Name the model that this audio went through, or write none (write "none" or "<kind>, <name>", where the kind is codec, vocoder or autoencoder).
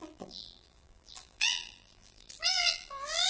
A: vocoder, BigVGAN v2